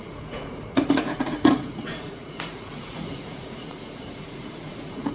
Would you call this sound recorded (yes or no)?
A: no